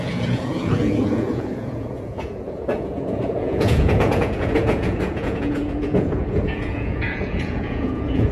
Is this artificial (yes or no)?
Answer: yes